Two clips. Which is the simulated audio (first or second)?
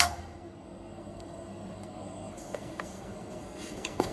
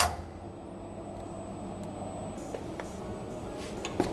first